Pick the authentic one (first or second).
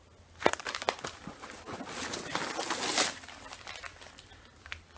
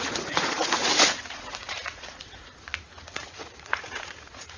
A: first